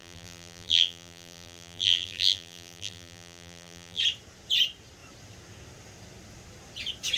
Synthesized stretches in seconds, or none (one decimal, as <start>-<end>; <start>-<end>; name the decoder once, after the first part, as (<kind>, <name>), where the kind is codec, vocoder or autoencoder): 0.0-4.0 (vocoder, BigVGAN v2)